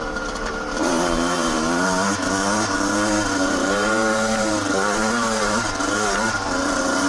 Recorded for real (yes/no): no